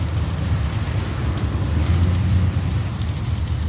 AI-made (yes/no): no